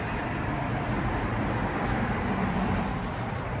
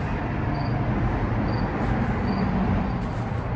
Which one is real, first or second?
second